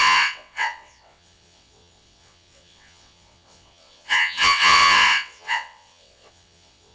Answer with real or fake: fake